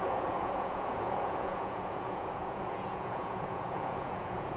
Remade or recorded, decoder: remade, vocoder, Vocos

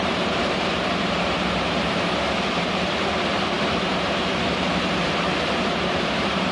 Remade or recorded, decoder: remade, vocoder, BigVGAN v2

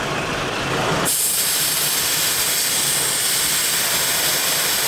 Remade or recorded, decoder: recorded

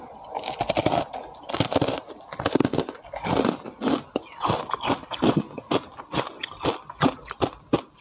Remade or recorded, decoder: recorded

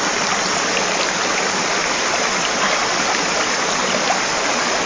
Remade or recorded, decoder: recorded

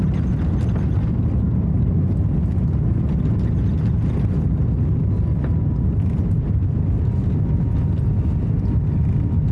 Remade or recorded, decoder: recorded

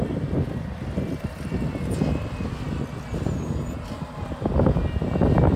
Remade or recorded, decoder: recorded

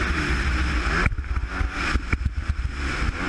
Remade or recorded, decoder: recorded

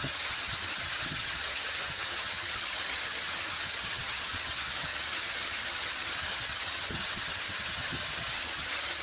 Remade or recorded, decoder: remade, vocoder, HiFi-GAN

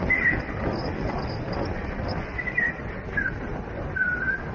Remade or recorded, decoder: recorded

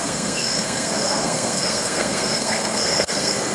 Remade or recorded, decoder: remade, codec, SNAC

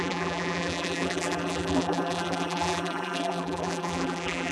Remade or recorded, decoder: remade, vocoder, BigVGAN v2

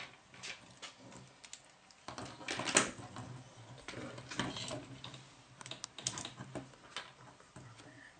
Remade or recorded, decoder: recorded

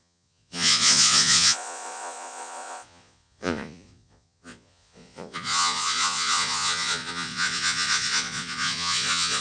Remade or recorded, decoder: remade, vocoder, Vocos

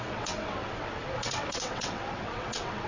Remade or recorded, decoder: remade, vocoder, WaveNeXt